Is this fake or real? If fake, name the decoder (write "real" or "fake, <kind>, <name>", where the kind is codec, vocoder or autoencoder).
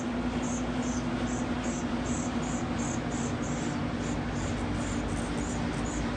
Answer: real